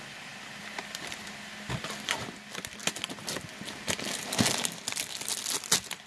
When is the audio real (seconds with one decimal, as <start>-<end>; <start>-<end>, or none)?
0.0-6.1